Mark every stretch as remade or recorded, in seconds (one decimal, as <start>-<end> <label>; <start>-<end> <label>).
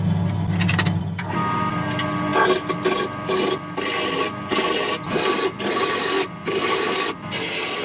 0.0-7.8 recorded